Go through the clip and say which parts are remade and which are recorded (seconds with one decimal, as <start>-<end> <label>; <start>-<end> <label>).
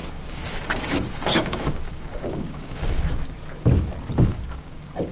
0.0-3.1 remade; 3.1-4.3 recorded; 4.3-5.1 remade